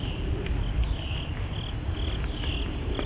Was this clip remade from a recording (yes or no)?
no